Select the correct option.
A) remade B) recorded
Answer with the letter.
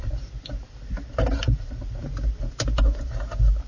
B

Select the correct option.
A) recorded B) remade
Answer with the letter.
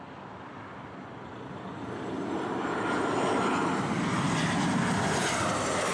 A